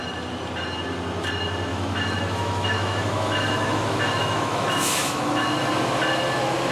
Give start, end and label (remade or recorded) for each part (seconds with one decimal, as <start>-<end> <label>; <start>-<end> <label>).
0.0-1.7 recorded; 1.7-5.7 remade; 5.7-6.7 recorded